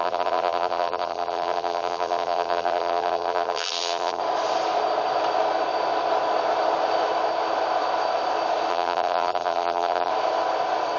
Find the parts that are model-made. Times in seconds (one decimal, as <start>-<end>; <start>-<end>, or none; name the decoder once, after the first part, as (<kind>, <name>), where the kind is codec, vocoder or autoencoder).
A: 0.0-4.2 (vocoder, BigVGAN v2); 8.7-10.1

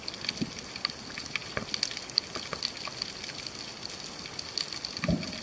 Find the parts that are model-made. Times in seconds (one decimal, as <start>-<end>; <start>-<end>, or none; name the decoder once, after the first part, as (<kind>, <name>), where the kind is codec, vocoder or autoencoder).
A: none

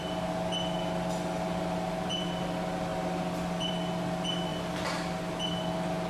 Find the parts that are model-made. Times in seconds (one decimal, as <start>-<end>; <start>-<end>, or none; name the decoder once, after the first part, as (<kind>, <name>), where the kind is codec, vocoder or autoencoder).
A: none

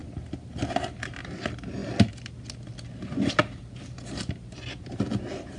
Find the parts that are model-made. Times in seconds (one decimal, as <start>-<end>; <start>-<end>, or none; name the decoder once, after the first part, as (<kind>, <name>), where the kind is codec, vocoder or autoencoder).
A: none